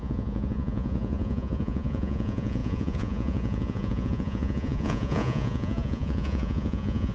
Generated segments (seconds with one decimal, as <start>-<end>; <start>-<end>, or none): 0.0-7.1